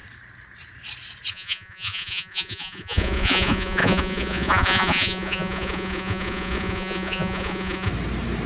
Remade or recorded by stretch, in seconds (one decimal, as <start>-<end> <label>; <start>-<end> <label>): 0.0-1.3 recorded; 1.3-7.9 remade; 7.9-8.5 recorded